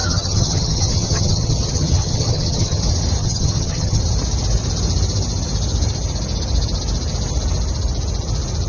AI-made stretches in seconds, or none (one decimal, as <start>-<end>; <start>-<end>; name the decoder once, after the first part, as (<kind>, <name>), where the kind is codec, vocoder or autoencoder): 0.0-2.8 (vocoder, HiFi-GAN); 3.2-4.0